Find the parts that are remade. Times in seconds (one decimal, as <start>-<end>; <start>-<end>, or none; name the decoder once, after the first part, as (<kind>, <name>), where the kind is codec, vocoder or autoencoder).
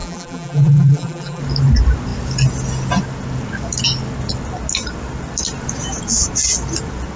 0.0-1.4 (vocoder, BigVGAN v2)